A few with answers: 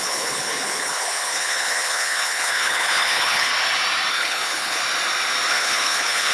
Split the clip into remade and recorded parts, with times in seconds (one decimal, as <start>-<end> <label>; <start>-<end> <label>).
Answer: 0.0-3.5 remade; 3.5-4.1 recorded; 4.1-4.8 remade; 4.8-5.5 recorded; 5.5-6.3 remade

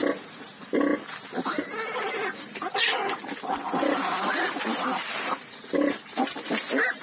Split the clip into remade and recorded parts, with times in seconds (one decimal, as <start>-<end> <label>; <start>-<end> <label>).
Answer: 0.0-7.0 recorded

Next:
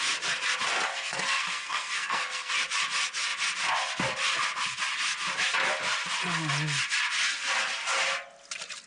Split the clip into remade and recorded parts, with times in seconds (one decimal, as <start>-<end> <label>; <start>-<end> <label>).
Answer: 0.0-0.9 recorded; 0.9-2.5 remade; 2.5-8.9 recorded

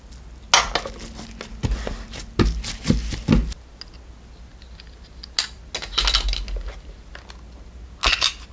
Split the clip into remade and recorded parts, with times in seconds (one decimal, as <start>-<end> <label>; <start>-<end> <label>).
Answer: 0.0-8.5 recorded

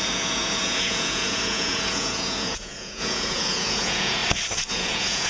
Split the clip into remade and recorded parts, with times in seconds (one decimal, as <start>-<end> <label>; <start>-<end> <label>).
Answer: 0.0-4.2 remade; 4.2-4.7 recorded; 4.7-5.3 remade

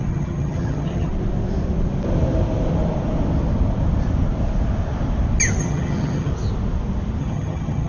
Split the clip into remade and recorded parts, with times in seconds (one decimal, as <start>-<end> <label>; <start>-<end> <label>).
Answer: 0.0-1.1 remade; 1.1-5.6 recorded; 5.6-6.3 remade; 6.3-7.2 recorded; 7.2-7.9 remade